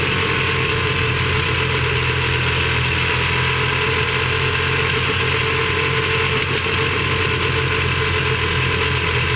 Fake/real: real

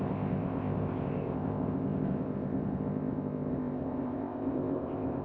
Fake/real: fake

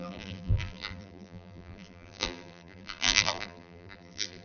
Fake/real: fake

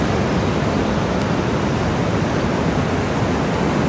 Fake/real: real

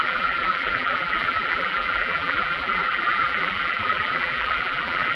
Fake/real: fake